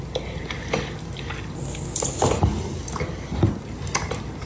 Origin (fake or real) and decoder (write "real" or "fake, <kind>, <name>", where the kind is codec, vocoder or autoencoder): real